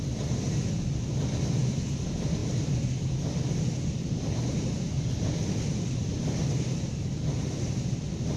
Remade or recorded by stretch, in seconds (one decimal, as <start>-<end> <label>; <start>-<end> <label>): 0.0-8.4 recorded